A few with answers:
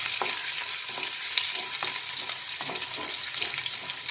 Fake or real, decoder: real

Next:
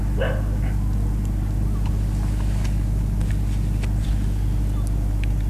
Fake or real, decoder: real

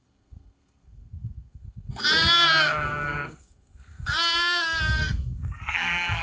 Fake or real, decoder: fake, codec, SNAC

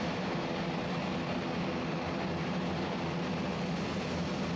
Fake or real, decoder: real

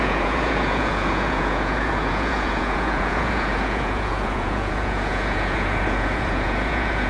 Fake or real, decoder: fake, vocoder, Vocos